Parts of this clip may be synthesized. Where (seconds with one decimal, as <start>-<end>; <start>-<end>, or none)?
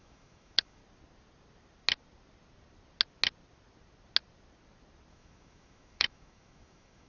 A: 0.0-0.8; 5.1-7.1